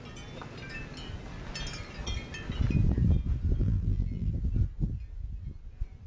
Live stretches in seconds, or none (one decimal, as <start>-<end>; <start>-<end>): 0.0-3.6; 4.3-6.1